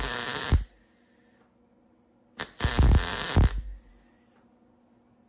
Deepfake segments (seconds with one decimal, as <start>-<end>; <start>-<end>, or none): none